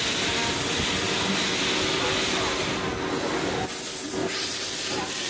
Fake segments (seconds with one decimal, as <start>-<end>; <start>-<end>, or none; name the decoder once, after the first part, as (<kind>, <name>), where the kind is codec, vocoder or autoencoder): 4.2-5.3 (vocoder, BigVGAN v2)